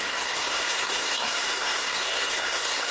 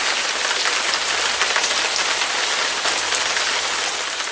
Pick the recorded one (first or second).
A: second